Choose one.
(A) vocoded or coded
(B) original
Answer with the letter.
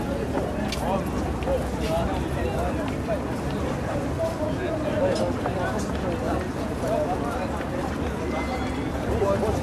B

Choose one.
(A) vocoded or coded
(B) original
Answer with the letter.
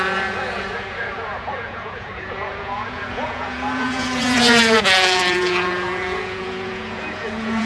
A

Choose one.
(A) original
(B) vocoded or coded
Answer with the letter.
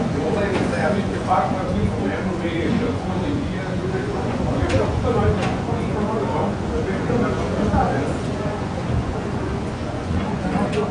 B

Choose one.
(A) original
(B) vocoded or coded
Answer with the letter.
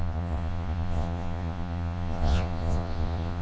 B